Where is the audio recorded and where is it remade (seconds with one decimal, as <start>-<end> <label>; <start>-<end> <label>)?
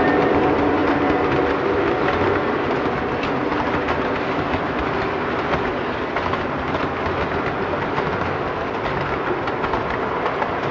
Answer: 0.0-10.7 recorded